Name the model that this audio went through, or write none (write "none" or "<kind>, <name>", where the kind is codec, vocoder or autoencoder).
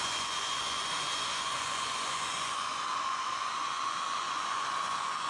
vocoder, Vocos